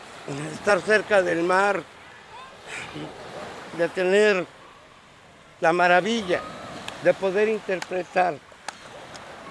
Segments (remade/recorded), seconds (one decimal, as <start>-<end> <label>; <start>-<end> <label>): 0.0-3.7 recorded; 3.7-4.6 remade; 4.6-5.5 recorded; 5.5-6.4 remade; 6.4-9.5 recorded